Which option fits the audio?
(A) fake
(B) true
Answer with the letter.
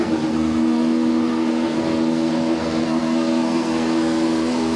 A